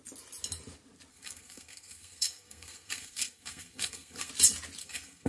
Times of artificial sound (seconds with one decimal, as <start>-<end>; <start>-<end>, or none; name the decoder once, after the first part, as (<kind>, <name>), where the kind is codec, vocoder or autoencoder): 1.1-4.3 (codec, SNAC); 4.8-5.3